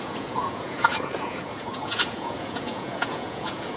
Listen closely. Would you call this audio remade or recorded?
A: remade